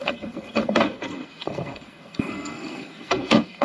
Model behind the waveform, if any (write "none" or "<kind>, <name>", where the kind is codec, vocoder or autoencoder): codec, SNAC